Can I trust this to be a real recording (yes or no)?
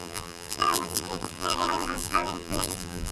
no